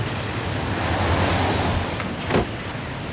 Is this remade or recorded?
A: recorded